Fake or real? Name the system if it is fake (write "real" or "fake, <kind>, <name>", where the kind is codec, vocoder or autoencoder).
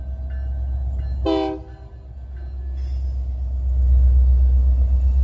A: real